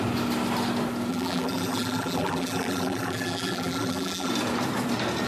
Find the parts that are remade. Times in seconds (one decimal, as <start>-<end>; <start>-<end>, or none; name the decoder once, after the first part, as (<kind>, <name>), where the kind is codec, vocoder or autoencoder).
1.1-4.3 (vocoder, BigVGAN v2)